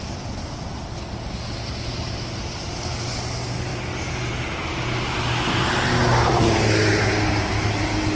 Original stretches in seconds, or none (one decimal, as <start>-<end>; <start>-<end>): 0.0-8.1